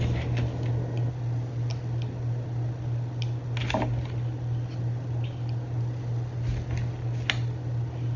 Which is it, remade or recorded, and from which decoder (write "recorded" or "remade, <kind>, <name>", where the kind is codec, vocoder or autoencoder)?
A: recorded